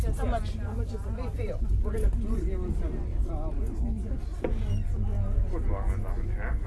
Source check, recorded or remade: recorded